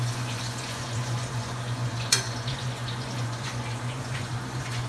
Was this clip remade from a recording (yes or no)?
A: yes